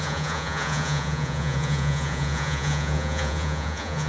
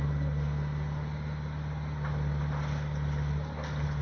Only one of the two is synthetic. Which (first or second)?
first